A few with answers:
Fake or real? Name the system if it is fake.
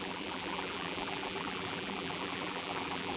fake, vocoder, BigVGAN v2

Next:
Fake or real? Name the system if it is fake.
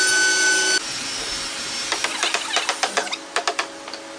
real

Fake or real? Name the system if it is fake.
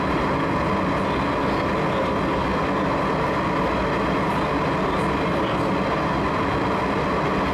real